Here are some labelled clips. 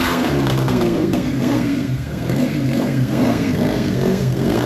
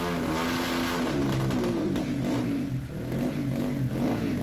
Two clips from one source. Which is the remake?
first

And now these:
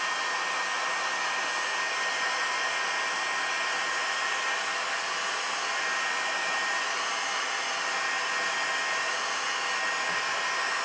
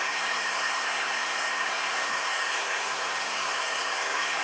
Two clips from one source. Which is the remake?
second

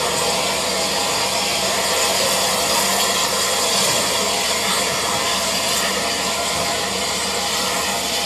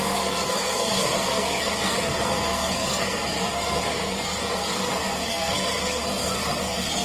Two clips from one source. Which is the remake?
second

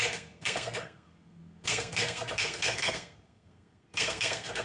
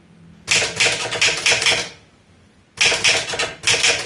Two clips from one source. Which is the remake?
first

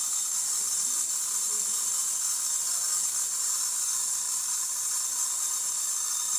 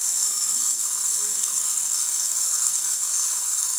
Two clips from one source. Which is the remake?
second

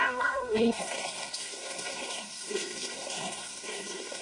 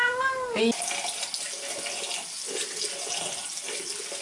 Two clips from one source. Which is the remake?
first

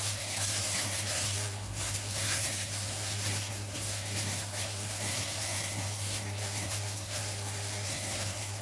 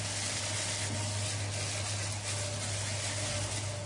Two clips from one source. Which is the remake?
first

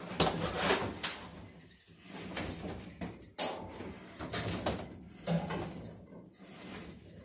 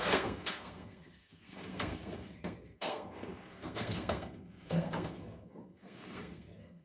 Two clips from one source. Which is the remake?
second